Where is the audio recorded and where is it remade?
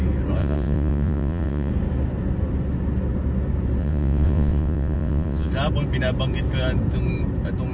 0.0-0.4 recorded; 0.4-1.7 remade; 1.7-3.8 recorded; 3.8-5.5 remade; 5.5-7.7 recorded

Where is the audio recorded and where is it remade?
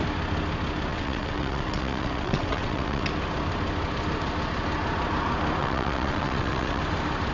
0.0-0.9 recorded; 0.9-3.1 remade; 3.1-5.6 recorded; 5.6-6.8 remade; 6.8-7.3 recorded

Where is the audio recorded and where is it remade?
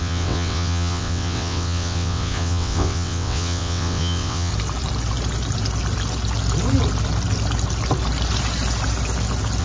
0.0-4.5 remade; 4.5-9.6 recorded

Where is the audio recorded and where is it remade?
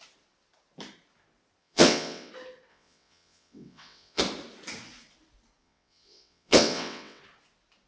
0.0-1.6 recorded; 1.6-2.3 remade; 2.3-2.7 recorded; 2.7-4.2 remade; 4.2-5.6 recorded; 5.6-7.2 remade; 7.2-7.9 recorded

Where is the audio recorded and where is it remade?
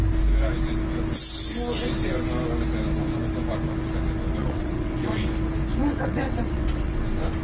0.0-4.4 recorded; 4.4-5.3 remade; 5.3-5.7 recorded; 5.7-7.0 remade; 7.0-7.4 recorded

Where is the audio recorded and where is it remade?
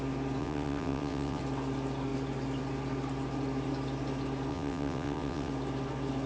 0.0-0.4 recorded; 0.4-1.4 remade; 1.4-4.5 recorded; 4.5-5.5 remade; 5.5-6.3 recorded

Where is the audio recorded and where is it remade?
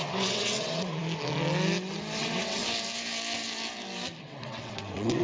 0.0-1.0 remade; 1.0-2.2 recorded; 2.2-2.6 remade; 2.6-4.2 recorded; 4.2-5.2 remade